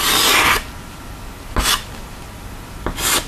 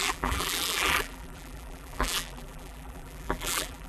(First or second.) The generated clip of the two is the second